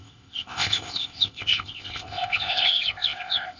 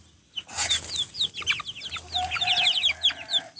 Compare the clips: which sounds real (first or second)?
second